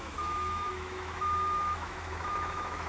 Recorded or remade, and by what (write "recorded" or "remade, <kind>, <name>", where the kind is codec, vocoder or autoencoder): remade, autoencoder, DAC-VAE